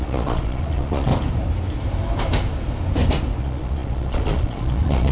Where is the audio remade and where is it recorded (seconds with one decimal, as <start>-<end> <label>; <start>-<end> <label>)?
0.0-1.1 remade; 1.1-3.4 recorded; 3.4-5.1 remade